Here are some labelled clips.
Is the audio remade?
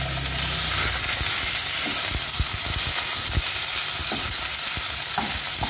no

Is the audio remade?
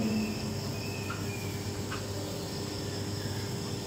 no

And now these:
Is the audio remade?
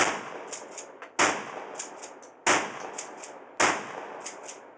no